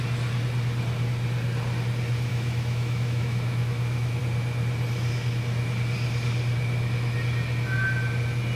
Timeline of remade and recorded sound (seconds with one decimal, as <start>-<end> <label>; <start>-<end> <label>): 0.0-2.3 recorded; 2.3-4.2 remade; 4.2-8.6 recorded